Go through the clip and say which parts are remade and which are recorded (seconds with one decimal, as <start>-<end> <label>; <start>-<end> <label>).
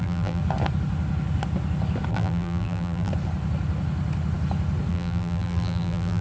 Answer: 0.0-0.4 remade; 0.4-2.1 recorded; 2.1-3.1 remade; 3.1-4.9 recorded; 4.9-6.2 remade